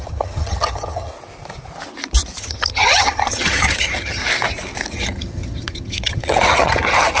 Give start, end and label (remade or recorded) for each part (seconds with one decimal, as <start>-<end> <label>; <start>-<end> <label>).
0.0-1.1 remade; 1.1-2.4 recorded; 2.4-4.2 remade; 4.2-4.9 recorded; 4.9-7.2 remade